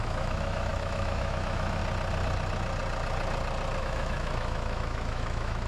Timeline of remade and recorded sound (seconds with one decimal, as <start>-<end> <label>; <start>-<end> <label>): 0.0-1.8 remade; 1.8-3.8 recorded; 3.8-5.7 remade